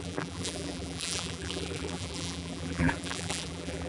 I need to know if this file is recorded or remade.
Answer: remade